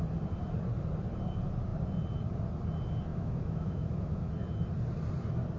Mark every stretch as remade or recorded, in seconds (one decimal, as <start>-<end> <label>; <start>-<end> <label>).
0.0-3.1 recorded; 3.1-4.3 remade; 4.3-5.6 recorded